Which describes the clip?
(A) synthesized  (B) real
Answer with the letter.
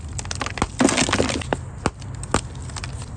B